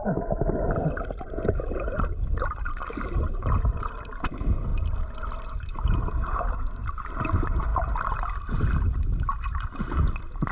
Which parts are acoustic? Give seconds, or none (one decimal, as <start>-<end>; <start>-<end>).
0.0-10.5